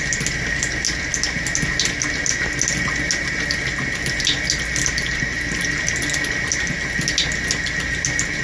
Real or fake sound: real